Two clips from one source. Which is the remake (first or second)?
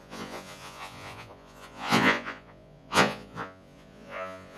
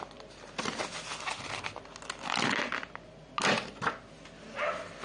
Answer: first